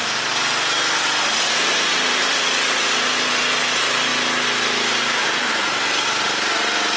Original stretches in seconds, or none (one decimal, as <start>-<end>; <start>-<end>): 0.0-7.0

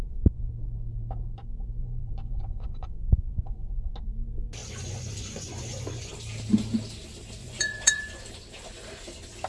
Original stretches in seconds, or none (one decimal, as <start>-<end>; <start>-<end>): 0.0-1.8; 3.9-4.6; 6.1-7.4; 8.2-9.5

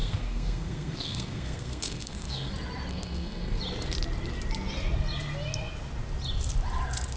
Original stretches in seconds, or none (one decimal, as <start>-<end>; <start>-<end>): 2.5-2.9; 3.6-7.2

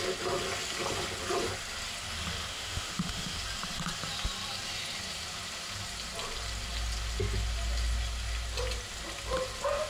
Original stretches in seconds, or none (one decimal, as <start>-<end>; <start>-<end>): 0.0-2.5; 3.4-9.9

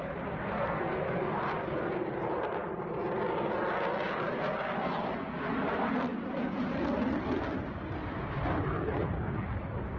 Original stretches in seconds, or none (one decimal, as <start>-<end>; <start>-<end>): 0.0-0.5; 1.1-10.0